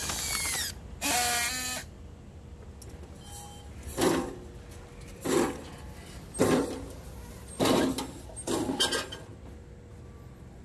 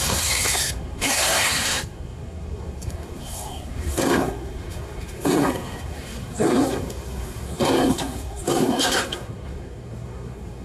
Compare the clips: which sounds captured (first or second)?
first